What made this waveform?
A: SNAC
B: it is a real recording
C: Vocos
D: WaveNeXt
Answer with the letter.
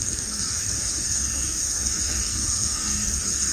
A